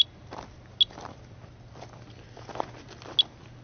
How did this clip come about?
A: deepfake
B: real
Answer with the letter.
B